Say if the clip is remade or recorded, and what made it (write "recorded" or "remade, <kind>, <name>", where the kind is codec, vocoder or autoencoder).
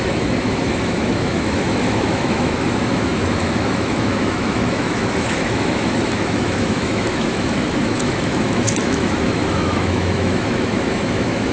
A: remade, autoencoder, DAC-VAE